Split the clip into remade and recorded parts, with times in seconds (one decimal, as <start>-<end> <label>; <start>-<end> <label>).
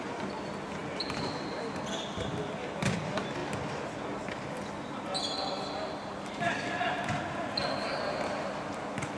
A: 0.0-9.2 recorded